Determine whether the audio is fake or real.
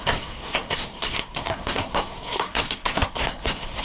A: fake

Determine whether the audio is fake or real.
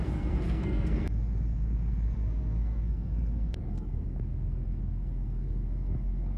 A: fake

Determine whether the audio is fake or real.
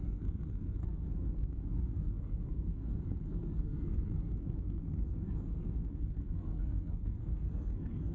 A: fake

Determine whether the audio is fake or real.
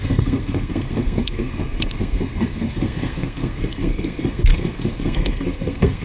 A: fake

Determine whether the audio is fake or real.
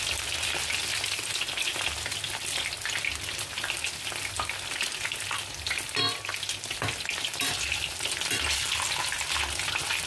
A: real